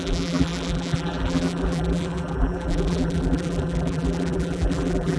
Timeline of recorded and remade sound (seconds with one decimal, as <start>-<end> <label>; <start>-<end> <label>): 0.0-5.2 remade